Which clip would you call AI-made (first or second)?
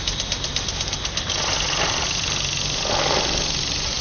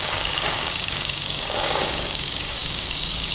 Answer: second